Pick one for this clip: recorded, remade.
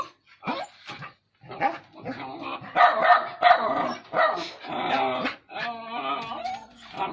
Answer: recorded